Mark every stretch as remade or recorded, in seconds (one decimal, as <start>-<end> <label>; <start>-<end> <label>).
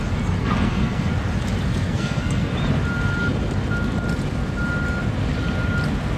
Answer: 0.0-0.4 recorded; 0.4-1.1 remade; 1.1-1.7 recorded; 1.7-2.5 remade; 2.5-6.2 recorded